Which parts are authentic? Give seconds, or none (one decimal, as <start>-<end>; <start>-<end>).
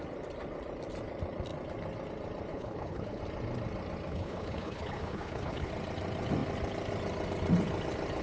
0.0-2.5; 3.2-4.1; 5.7-8.2